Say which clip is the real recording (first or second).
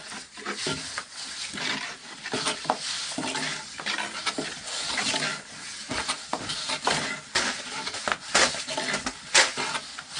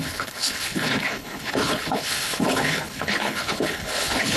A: first